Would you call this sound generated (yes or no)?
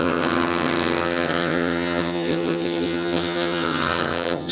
yes